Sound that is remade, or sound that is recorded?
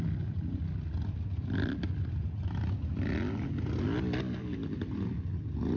recorded